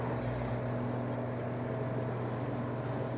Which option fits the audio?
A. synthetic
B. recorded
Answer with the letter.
B